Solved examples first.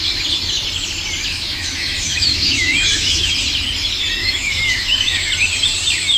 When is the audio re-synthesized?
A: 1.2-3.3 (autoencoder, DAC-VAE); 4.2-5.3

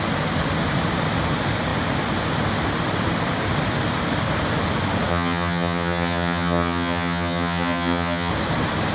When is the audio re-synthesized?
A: 5.1-8.3 (vocoder, HiFi-GAN)

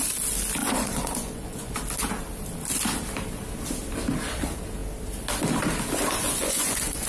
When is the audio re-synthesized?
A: 0.6-1.7 (vocoder, Vocos); 6.2-7.1

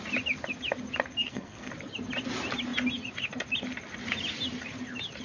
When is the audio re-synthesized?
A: 1.2-1.7 (codec, SNAC)

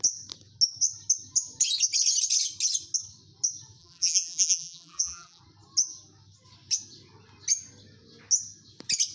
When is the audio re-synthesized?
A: 3.8-5.4 (vocoder, BigVGAN v2)

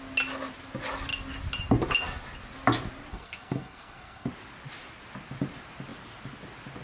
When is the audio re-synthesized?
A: 3.1-4.3 (codec, SNAC)

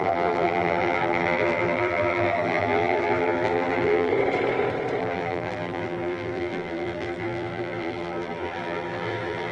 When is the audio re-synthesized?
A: 0.0-4.1 (vocoder, BigVGAN v2); 5.0-9.5